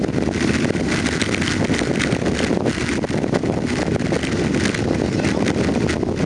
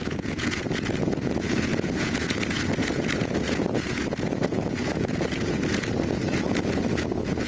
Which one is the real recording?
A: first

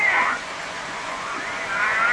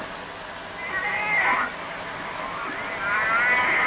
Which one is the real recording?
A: second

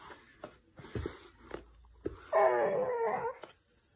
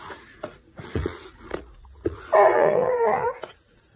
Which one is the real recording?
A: first